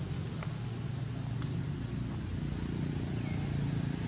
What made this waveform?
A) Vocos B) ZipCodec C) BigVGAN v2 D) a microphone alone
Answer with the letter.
D